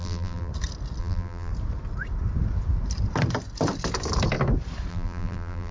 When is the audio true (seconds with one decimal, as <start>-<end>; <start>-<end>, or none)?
0.5-1.0; 1.5-4.9